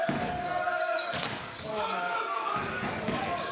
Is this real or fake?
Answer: fake